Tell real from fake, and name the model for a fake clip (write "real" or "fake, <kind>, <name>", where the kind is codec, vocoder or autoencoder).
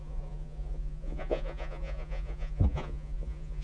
fake, vocoder, Vocos